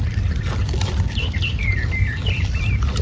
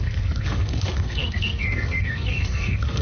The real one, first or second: first